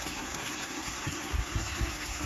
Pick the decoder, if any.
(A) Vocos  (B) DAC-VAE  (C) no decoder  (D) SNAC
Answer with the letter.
D